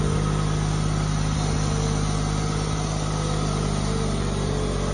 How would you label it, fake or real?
real